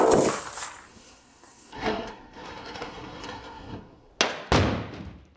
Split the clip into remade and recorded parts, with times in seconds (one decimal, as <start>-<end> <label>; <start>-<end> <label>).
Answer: 0.0-0.9 recorded; 0.9-4.1 remade; 4.1-5.4 recorded